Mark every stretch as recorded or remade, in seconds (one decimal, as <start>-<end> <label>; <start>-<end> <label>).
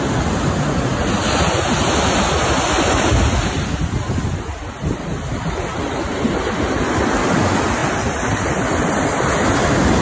0.0-10.0 recorded